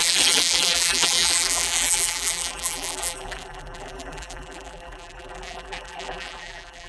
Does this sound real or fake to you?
fake